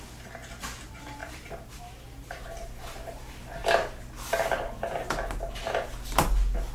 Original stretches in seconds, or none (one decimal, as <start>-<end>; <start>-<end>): 0.0-1.2; 1.8-6.7